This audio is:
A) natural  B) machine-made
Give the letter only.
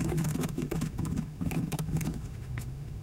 B